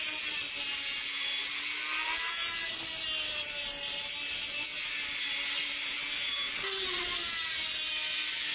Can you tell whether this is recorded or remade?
recorded